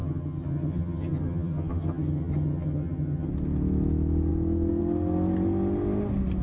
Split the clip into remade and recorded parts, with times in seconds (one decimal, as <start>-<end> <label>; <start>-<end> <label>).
0.0-3.3 remade; 3.3-6.4 recorded